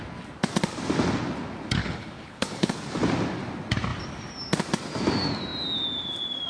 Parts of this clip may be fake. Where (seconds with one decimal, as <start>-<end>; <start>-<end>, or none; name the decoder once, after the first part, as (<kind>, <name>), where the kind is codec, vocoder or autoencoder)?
1.8-2.7 (codec, HILCodec)